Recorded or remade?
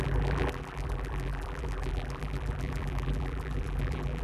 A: remade